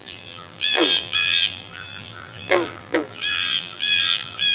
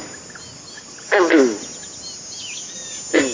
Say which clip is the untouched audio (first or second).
second